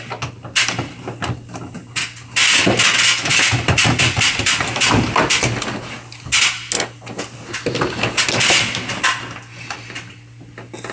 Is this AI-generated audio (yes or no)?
no